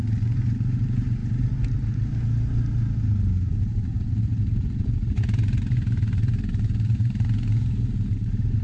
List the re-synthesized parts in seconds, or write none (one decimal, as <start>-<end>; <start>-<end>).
0.0-1.2; 3.5-8.6